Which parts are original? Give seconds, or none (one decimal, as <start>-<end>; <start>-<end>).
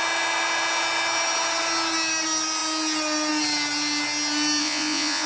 0.0-4.6